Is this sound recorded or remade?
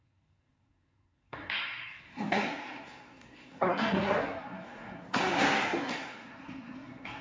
remade